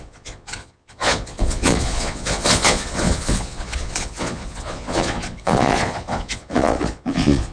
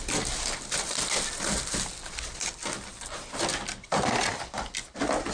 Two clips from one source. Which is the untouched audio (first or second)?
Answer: second